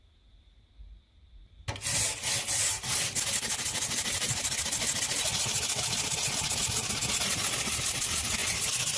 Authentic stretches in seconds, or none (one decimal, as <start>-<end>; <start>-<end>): 0.0-9.0